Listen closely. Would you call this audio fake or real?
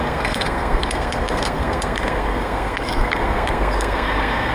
fake